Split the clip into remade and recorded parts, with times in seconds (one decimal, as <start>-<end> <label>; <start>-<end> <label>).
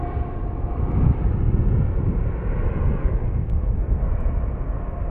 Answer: 0.0-3.0 recorded; 3.0-4.1 remade; 4.1-5.1 recorded